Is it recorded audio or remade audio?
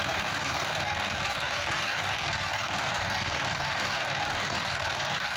remade